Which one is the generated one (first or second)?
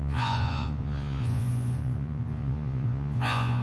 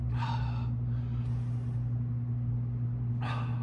first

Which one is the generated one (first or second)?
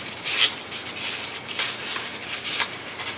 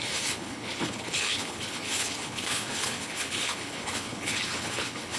second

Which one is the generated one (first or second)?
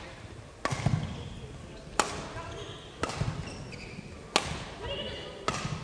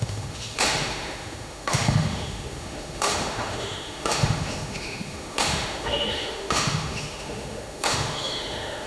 second